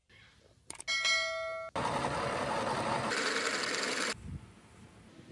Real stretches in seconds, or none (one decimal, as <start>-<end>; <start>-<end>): 0.8-5.3